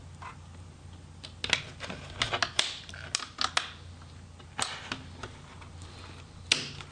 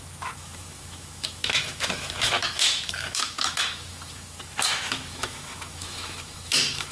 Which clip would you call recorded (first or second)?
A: first